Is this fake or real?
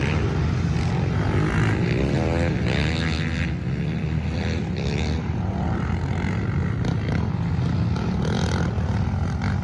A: real